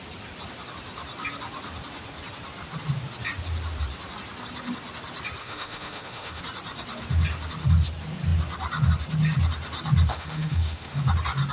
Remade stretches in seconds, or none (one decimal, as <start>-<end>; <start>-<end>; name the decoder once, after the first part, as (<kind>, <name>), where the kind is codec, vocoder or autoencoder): 5.4-6.4 (autoencoder, DAC-VAE); 10.1-11.0